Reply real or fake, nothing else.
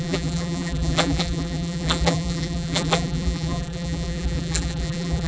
fake